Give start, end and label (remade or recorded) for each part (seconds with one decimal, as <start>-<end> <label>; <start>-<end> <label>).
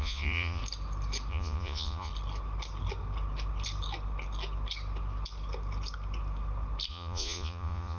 0.0-0.6 remade; 0.6-1.3 recorded; 1.3-2.1 remade; 2.1-6.9 recorded; 6.9-8.0 remade